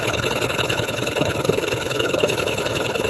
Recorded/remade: remade